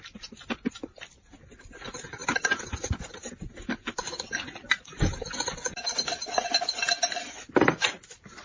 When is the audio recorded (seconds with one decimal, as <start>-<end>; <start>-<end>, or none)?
0.0-8.4